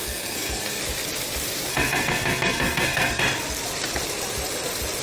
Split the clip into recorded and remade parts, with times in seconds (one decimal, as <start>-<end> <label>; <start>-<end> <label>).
0.0-0.8 remade; 0.8-1.7 recorded; 1.7-3.2 remade; 3.2-5.0 recorded